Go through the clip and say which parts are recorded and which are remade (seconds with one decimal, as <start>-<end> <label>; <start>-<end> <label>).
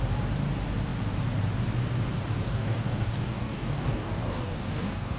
0.0-2.4 recorded; 2.4-5.2 remade